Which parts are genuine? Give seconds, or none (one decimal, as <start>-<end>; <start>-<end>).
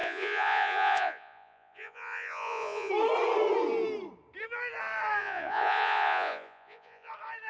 2.9-5.2; 7.1-7.5